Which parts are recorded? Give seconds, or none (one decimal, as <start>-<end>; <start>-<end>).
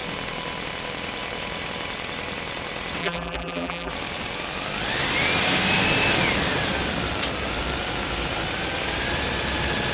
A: 0.0-3.0; 3.9-9.9